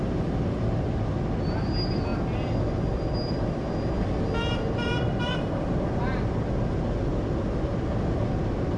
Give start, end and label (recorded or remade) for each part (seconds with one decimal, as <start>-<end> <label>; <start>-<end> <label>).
0.0-8.8 recorded